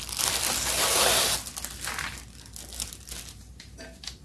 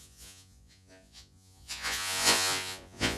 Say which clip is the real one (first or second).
first